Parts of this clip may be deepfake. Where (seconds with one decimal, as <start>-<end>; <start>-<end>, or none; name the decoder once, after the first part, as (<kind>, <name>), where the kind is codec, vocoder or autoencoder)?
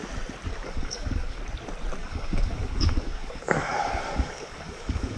0.5-1.4 (codec, DAC); 2.0-5.2